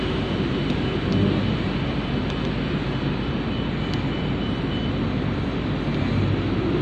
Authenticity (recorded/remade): recorded